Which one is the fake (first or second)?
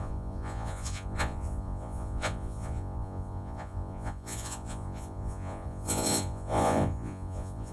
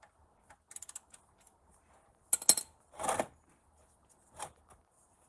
first